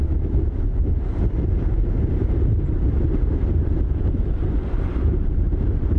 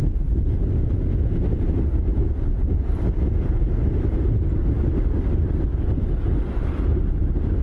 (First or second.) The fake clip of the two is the first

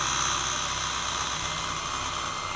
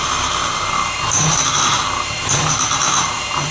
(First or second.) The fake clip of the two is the second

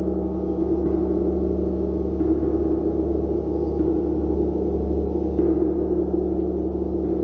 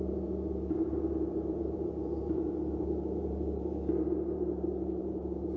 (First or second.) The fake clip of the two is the second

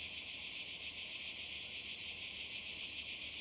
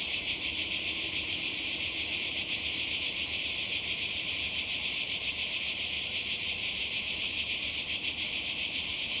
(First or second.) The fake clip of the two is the second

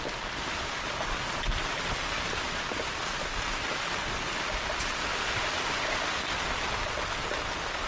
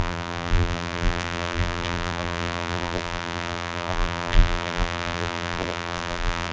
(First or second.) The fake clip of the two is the second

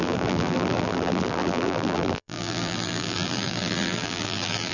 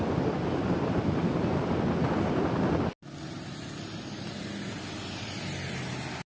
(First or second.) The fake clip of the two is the first